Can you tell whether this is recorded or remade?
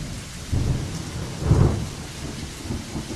recorded